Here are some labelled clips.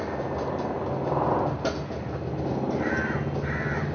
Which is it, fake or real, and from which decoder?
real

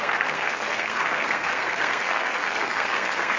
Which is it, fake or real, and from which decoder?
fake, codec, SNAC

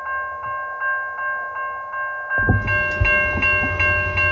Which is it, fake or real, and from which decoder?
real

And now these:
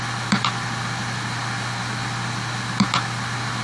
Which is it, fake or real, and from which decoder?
real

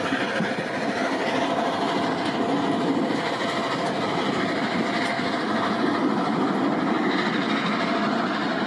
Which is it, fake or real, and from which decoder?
real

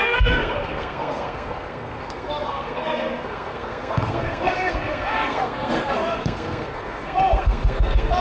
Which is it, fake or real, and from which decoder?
fake, codec, SNAC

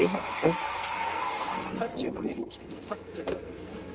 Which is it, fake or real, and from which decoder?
fake, codec, SNAC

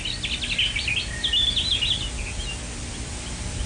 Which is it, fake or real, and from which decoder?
real